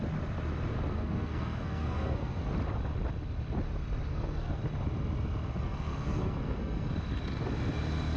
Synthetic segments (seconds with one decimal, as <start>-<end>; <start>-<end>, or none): 0.9-2.4; 4.1-4.6; 5.6-6.9